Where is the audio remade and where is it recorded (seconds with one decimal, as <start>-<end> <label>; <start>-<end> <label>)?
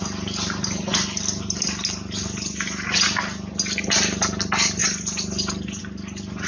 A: 0.0-6.5 recorded